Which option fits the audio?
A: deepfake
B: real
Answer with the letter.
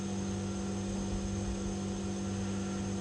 B